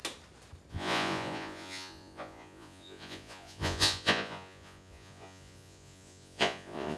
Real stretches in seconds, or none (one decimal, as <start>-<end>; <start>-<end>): 0.0-0.7